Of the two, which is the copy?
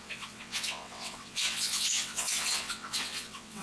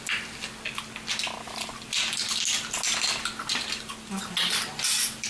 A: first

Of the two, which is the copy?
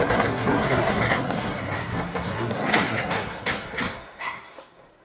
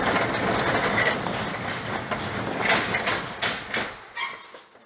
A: first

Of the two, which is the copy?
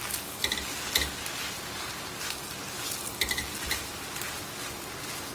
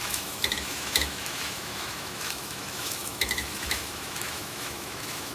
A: second